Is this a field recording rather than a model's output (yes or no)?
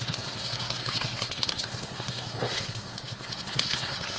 no